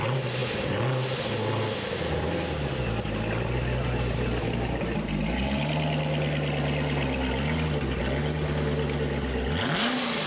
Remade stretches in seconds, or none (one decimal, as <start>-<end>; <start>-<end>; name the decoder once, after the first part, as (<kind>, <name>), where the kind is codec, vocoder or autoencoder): none